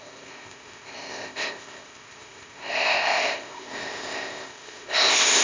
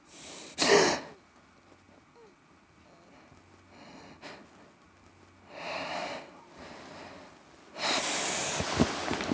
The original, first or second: second